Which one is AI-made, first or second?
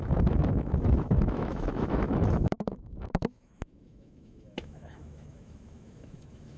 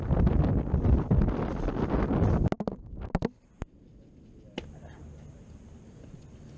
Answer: first